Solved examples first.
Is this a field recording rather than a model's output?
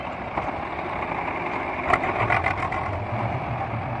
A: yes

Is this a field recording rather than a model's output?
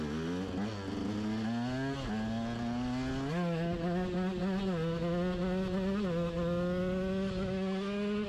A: yes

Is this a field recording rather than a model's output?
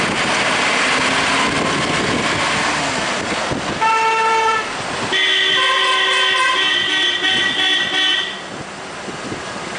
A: yes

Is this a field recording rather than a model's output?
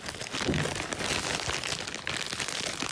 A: yes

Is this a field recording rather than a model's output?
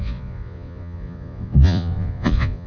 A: no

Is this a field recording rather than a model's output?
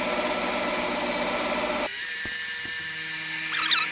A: yes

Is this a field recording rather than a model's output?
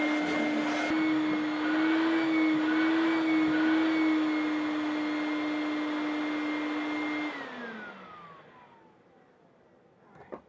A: yes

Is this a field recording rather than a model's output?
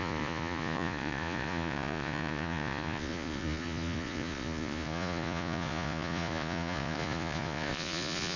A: no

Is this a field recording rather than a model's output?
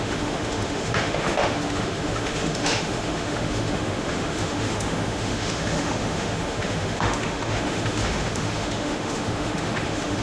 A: no